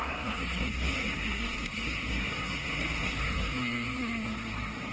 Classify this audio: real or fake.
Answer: fake